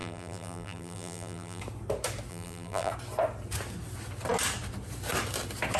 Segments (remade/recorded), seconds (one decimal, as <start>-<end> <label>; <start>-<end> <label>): 0.0-1.6 remade; 1.6-2.3 recorded; 2.3-2.9 remade; 2.9-5.8 recorded